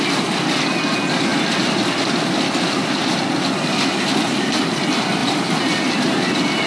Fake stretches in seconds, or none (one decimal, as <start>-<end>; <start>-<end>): none